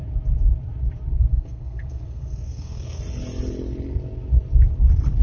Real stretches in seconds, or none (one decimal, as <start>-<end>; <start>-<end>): 0.0-1.3; 3.0-5.2